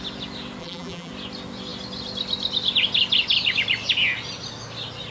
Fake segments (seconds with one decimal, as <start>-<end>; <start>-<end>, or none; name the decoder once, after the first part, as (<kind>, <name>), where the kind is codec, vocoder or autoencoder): 0.6-1.1 (vocoder, BigVGAN v2)